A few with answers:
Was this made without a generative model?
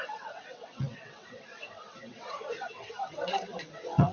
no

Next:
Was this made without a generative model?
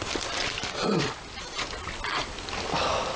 yes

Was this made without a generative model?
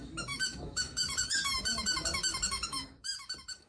no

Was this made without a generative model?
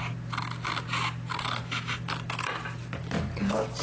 yes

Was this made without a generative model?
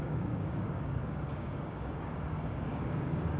no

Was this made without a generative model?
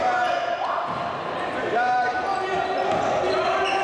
yes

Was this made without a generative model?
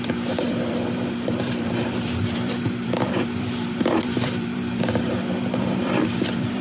no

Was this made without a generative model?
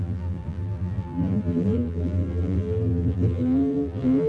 no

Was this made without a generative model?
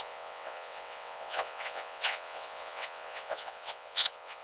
no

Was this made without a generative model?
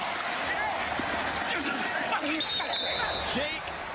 yes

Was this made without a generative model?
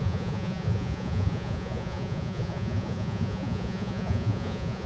no